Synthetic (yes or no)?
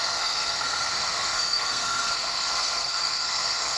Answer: yes